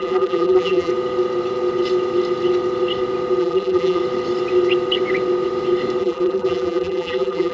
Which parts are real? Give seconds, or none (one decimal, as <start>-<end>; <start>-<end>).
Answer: 0.9-3.4; 4.0-6.0